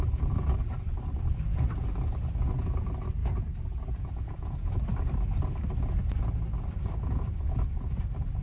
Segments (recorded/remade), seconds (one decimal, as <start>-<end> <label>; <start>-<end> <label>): 0.0-3.2 recorded; 3.2-4.7 remade; 4.7-8.4 recorded